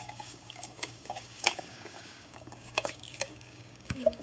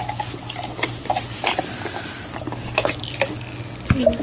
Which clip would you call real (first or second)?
second